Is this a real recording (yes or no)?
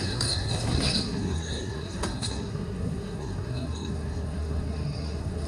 no